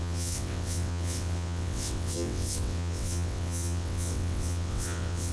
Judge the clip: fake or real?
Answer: fake